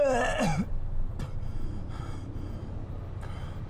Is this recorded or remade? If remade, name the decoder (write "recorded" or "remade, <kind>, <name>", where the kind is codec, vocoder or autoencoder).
recorded